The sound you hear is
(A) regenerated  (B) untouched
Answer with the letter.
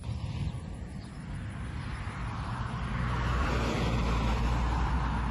B